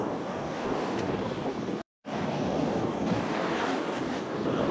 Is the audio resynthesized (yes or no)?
yes